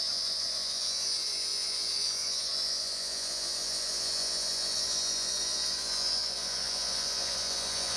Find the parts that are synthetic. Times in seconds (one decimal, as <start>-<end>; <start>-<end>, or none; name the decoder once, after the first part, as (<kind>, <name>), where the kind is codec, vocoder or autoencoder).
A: 0.0-8.0 (vocoder, Vocos)